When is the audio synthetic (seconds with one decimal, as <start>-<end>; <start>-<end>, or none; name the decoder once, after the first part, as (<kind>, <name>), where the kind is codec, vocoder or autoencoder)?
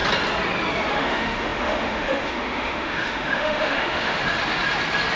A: 0.9-4.2 (autoencoder, DAC-VAE)